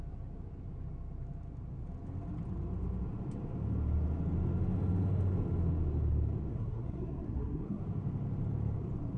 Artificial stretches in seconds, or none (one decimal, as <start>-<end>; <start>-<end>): 6.5-7.8